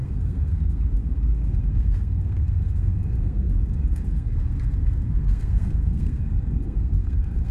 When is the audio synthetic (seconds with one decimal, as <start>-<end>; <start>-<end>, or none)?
0.0-7.5